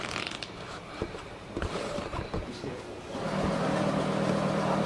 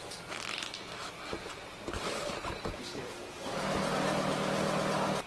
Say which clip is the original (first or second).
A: second